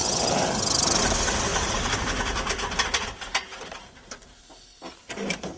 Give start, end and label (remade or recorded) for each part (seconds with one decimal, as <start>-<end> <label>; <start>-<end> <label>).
0.0-1.0 recorded; 1.0-1.5 remade; 1.5-4.9 recorded; 4.9-5.6 remade